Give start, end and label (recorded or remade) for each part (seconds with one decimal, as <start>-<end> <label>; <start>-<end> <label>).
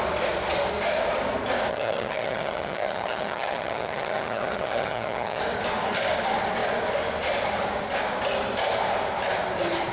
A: 0.0-1.7 recorded; 1.7-5.4 remade; 5.4-9.9 recorded